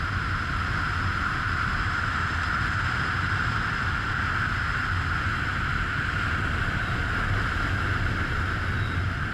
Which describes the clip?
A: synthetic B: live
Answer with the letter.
B